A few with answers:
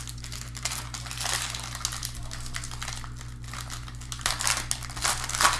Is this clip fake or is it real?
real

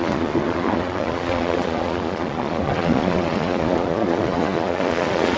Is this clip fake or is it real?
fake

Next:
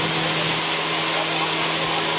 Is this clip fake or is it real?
real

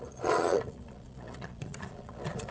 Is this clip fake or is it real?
fake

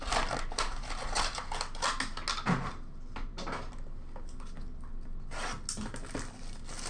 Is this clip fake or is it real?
real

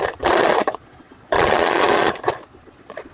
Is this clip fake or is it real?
fake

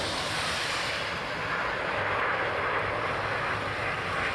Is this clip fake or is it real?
real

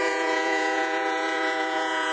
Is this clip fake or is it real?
fake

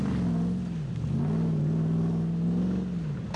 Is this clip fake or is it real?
real